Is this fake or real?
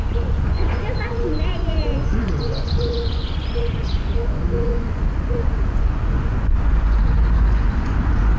fake